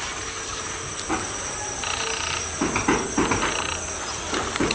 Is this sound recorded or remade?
recorded